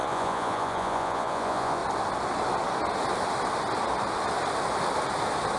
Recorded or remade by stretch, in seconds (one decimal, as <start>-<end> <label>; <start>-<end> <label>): 0.0-1.8 remade; 1.8-5.6 recorded